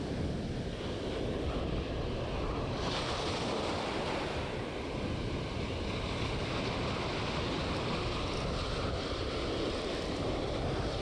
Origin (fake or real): fake